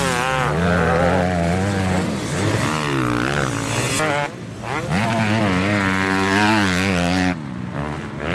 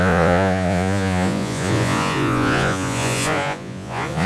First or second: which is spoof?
second